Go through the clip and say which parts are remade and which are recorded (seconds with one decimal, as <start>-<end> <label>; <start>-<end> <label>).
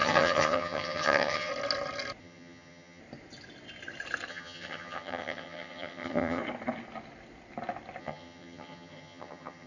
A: 0.0-1.5 remade; 1.5-2.2 recorded; 2.2-3.0 remade; 3.0-4.3 recorded; 4.3-6.4 remade; 6.4-8.0 recorded; 8.0-9.7 remade